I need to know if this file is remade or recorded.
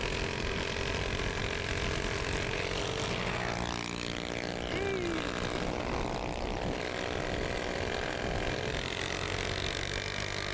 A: recorded